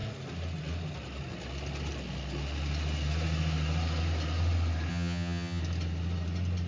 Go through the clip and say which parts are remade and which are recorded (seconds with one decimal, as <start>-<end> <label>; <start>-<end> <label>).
0.0-4.9 recorded; 4.9-5.6 remade; 5.6-6.7 recorded